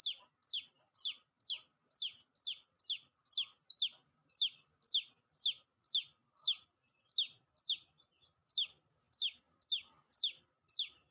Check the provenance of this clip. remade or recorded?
recorded